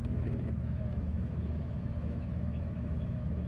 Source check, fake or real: fake